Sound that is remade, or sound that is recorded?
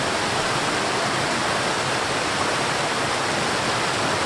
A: recorded